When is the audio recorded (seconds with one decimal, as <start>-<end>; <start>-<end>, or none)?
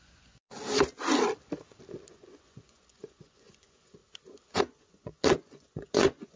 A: 0.5-2.1; 4.0-4.6